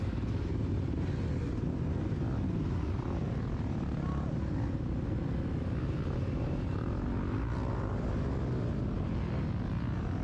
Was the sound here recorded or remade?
recorded